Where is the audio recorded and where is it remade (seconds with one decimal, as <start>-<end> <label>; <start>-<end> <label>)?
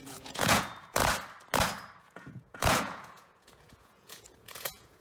0.0-1.0 remade; 1.0-2.0 recorded; 2.0-5.0 remade